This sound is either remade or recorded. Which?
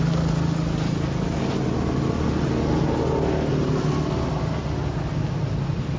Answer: recorded